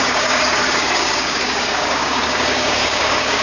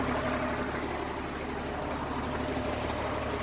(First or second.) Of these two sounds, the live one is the second